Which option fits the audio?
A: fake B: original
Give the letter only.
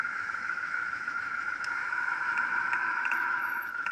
A